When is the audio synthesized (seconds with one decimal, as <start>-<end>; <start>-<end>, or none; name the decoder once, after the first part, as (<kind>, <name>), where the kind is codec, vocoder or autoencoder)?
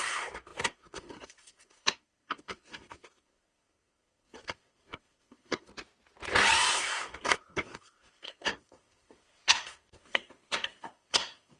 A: 0.0-5.7 (codec, SNAC); 6.7-11.6